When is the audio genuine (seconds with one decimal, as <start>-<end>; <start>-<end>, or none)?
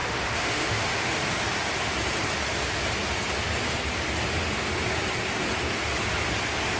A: 1.1-6.8